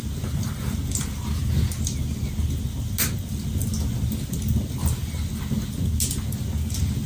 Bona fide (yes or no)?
yes